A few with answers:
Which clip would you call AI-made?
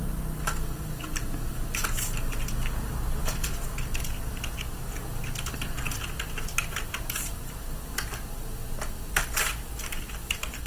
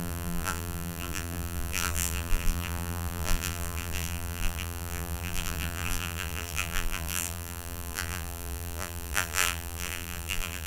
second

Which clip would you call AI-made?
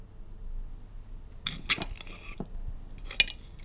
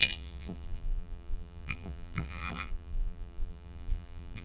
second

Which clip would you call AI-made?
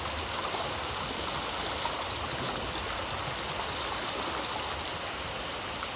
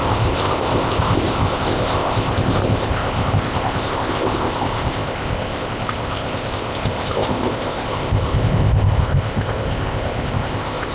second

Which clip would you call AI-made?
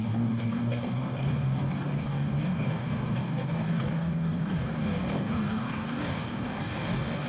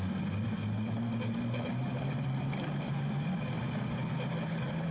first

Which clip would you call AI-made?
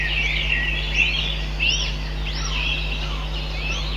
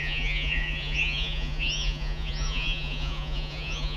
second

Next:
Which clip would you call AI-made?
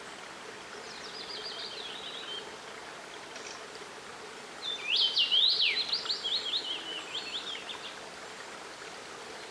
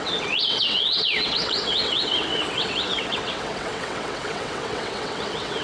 second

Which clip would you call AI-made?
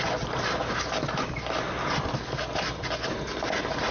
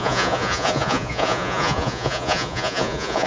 second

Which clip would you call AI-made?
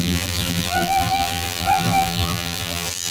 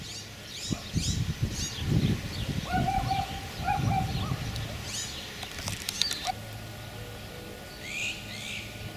first